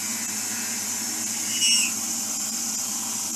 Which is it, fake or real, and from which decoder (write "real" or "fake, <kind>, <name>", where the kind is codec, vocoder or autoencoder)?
real